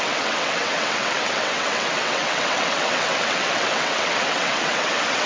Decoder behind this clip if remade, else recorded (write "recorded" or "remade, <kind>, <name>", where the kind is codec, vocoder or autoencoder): remade, vocoder, WaveNeXt